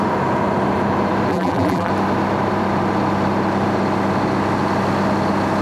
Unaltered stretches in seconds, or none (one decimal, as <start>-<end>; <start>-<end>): 0.0-1.3; 1.9-5.6